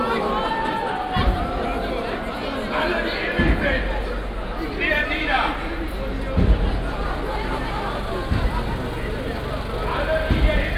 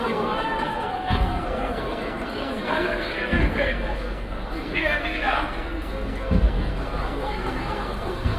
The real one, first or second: first